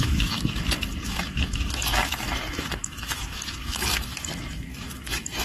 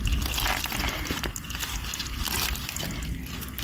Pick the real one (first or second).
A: second